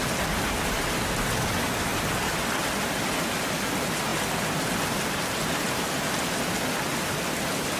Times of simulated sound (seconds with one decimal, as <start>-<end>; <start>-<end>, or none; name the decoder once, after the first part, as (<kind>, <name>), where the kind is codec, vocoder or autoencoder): none